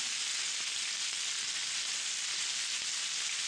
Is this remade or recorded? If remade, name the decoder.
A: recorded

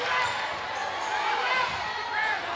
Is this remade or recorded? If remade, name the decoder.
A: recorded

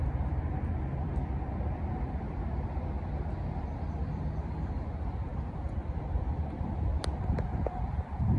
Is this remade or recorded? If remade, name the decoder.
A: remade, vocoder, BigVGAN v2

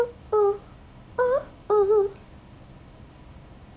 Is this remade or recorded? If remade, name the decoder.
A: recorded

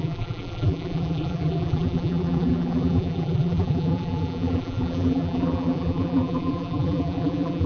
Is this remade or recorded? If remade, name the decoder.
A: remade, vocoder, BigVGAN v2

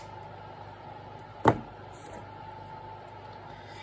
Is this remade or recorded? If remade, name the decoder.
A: recorded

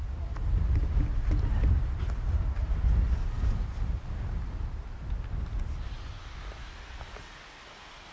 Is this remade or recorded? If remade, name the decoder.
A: recorded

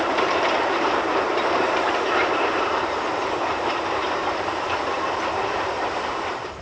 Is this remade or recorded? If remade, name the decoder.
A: remade, vocoder, BigVGAN v2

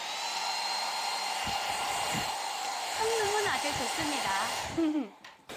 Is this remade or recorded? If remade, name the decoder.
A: remade, vocoder, BigVGAN v2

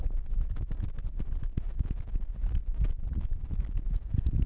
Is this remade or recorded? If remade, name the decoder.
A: remade, vocoder, BigVGAN v2